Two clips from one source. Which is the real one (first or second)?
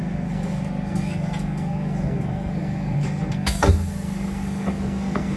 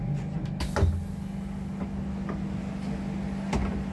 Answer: second